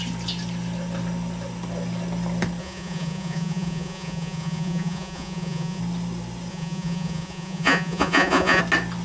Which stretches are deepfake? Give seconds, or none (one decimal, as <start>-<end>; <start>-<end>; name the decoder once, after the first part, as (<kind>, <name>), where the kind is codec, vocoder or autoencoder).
2.6-5.8 (vocoder, Vocos); 6.5-8.6